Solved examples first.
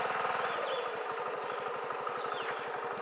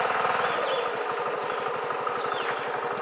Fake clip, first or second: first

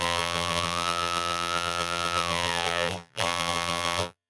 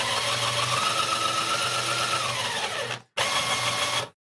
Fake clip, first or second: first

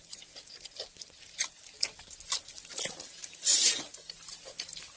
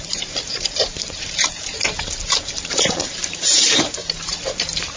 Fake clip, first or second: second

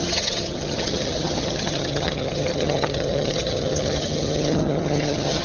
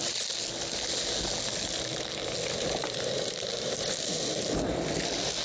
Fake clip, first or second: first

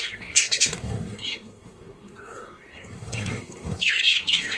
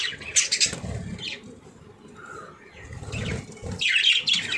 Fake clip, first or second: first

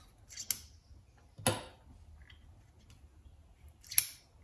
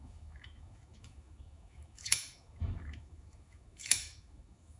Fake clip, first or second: second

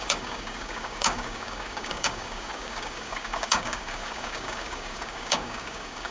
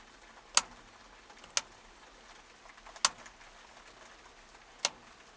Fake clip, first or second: first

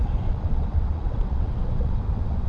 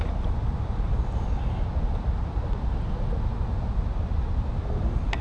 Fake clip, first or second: first